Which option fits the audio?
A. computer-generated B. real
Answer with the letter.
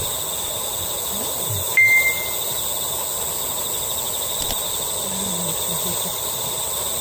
B